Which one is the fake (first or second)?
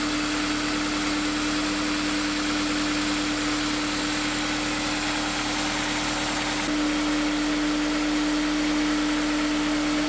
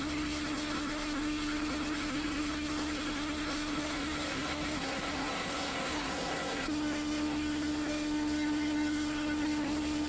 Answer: second